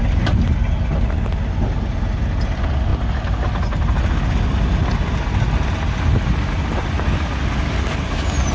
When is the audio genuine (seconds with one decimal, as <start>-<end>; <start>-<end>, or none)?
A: 0.0-8.5